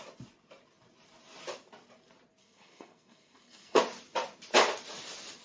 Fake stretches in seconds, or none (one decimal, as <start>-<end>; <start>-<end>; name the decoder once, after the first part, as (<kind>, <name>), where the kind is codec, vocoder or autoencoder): 2.4-3.8 (codec, SNAC)